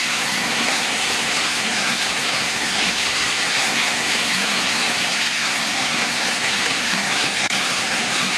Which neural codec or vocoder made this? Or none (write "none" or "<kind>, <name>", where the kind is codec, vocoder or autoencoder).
codec, SNAC